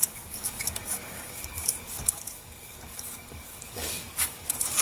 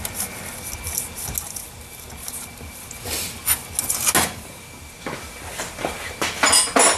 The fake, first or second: first